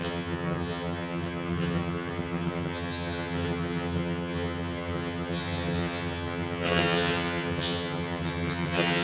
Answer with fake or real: fake